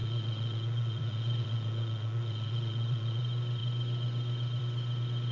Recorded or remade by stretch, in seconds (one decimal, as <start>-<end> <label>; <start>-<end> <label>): 0.0-3.2 remade; 3.2-5.3 recorded